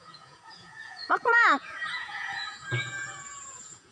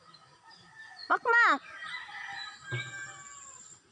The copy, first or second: first